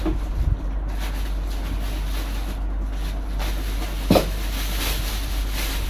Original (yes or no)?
yes